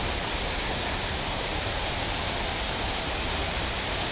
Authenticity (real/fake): fake